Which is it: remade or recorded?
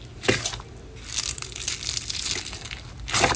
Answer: recorded